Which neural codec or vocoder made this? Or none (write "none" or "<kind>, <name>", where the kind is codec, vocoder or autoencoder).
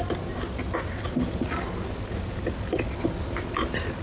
none